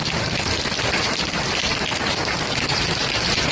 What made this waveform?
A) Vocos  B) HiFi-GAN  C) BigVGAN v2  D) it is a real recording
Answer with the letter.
C